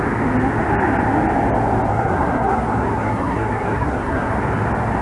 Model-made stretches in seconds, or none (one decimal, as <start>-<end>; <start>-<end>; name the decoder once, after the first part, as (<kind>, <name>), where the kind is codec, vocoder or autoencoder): 1.9-4.4 (codec, SNAC)